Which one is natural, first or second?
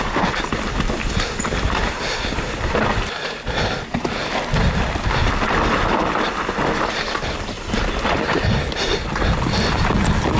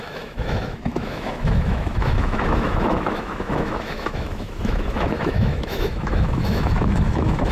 first